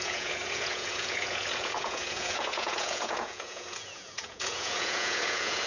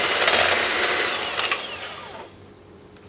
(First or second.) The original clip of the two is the second